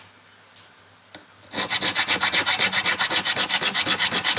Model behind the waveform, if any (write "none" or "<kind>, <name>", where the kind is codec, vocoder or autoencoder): none